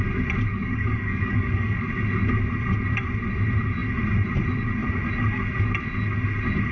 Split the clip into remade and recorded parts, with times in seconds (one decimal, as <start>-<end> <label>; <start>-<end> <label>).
0.0-0.5 recorded; 0.5-1.9 remade; 1.9-6.7 recorded